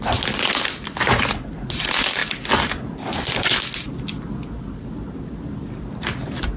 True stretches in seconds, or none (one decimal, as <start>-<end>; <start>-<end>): 0.0-6.6